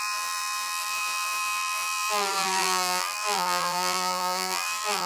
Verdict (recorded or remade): remade